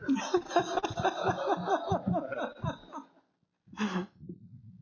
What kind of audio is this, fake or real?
real